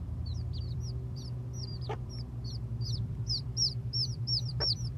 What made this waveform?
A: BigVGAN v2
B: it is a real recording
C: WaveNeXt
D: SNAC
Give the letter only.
A